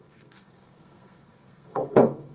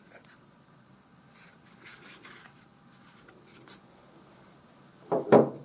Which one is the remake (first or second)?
first